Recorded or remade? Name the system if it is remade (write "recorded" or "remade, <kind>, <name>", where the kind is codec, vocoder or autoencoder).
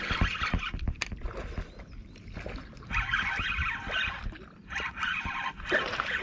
recorded